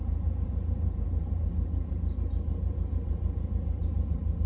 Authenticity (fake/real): fake